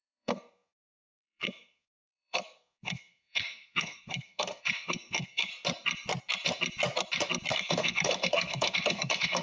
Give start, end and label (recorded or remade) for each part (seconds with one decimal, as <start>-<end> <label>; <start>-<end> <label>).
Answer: 0.0-5.5 remade; 5.5-7.5 recorded; 7.5-9.4 remade